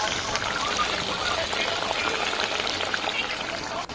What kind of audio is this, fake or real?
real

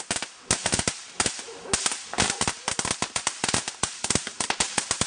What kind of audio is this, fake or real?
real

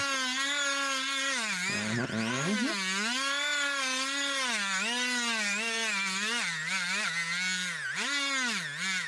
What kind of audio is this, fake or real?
real